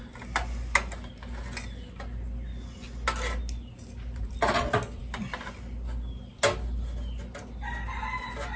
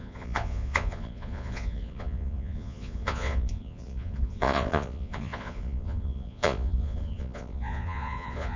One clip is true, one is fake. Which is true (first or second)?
first